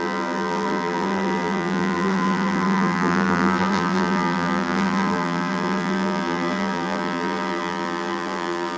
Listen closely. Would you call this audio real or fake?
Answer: fake